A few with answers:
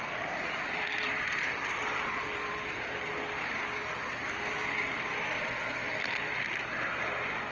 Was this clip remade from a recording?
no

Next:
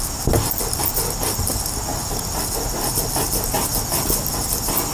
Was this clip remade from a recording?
no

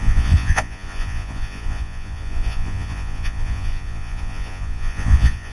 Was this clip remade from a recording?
yes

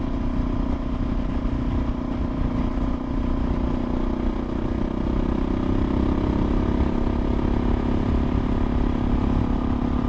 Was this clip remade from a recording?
no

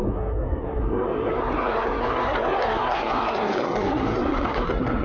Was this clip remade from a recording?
yes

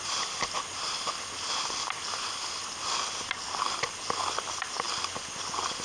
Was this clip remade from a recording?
no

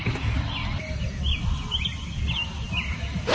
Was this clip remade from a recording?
no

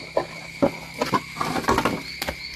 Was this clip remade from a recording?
no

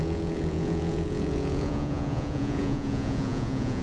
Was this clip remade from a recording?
yes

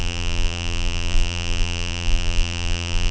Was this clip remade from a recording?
yes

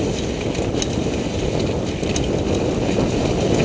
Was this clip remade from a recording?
no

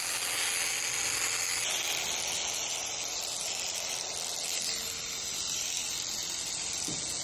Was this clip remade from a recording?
no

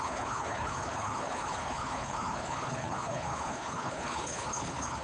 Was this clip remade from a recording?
yes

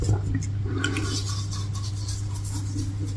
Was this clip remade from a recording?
no